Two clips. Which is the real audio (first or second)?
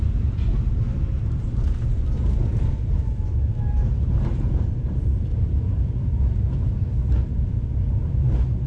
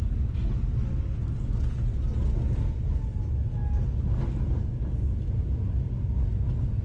second